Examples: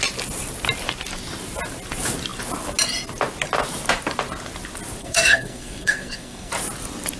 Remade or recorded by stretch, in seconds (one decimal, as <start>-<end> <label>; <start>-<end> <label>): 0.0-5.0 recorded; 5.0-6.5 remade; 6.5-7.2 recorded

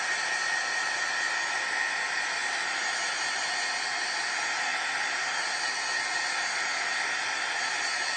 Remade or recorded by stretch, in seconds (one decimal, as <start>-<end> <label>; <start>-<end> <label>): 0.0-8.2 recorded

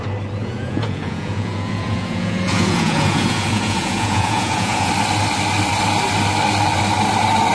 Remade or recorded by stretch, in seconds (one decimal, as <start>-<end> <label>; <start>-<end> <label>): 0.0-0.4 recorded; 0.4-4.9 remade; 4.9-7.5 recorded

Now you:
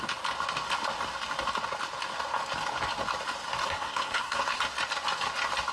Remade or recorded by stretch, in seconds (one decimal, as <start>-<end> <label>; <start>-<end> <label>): 0.0-3.6 recorded; 3.6-4.6 remade; 4.6-5.7 recorded

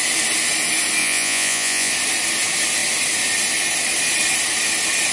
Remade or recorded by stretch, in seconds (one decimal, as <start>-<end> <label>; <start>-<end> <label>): 0.0-1.0 recorded; 1.0-1.9 remade; 1.9-5.1 recorded

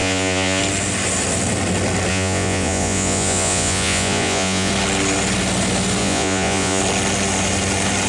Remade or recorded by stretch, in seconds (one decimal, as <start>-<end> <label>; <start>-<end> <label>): 0.0-0.6 remade; 0.6-2.1 recorded; 2.1-4.7 remade; 4.7-6.0 recorded; 6.0-6.8 remade; 6.8-8.1 recorded